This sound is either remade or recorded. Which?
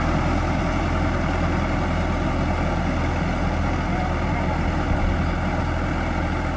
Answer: recorded